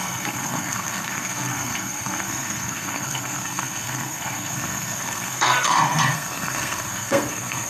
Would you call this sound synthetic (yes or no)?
yes